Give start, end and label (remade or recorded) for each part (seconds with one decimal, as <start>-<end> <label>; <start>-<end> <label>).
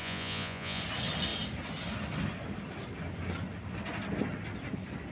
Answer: 0.0-0.8 remade; 0.8-5.1 recorded